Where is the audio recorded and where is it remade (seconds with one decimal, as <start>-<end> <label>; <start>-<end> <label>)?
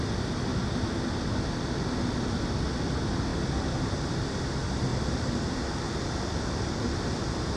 0.0-7.6 recorded